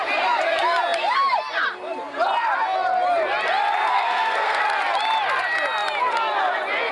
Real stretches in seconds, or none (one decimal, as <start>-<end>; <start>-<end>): 0.0-3.9; 4.6-6.9